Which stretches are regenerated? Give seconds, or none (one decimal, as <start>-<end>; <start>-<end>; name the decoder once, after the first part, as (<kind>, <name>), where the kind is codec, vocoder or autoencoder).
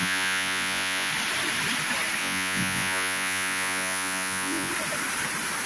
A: 0.0-1.1 (vocoder, Vocos); 2.2-4.7